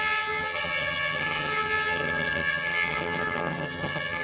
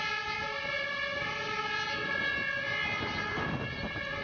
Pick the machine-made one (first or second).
first